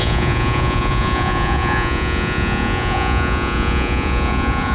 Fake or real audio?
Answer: fake